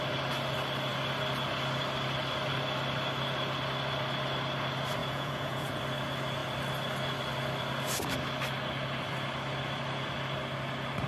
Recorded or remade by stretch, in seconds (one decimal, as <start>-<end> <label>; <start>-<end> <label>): 0.0-5.0 recorded; 5.0-5.8 remade; 5.8-11.1 recorded